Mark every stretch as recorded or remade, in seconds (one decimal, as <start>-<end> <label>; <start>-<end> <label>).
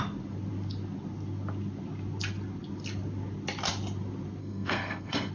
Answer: 0.0-4.4 recorded; 4.4-5.3 remade